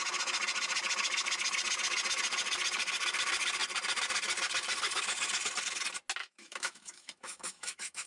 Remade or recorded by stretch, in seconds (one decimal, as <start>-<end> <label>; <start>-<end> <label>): 0.0-6.2 recorded; 6.2-8.1 remade